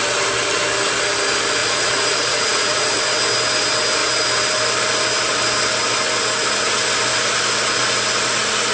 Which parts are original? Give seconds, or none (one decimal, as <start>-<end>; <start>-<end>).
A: 0.0-1.6; 3.0-8.7